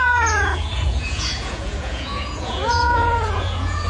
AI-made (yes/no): yes